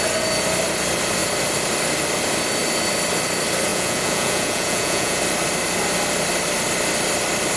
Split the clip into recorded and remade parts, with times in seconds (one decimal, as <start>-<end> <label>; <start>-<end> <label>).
0.0-3.7 recorded; 3.7-5.2 remade; 5.2-7.6 recorded